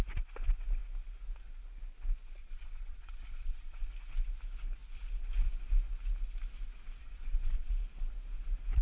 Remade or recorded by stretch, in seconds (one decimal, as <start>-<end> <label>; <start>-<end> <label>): 0.0-2.4 recorded; 2.4-3.9 remade; 3.9-7.0 recorded; 7.0-7.7 remade; 7.7-8.8 recorded